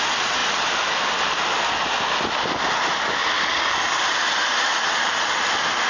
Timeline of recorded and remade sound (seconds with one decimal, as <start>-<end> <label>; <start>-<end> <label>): 0.0-5.9 recorded